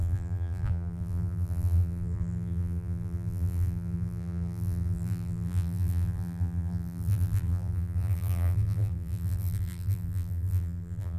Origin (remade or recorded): remade